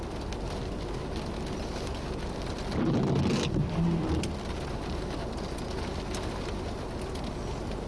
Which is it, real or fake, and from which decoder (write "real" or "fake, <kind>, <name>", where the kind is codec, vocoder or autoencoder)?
real